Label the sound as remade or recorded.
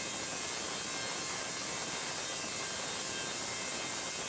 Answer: recorded